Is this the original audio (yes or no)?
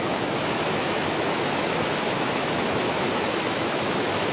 no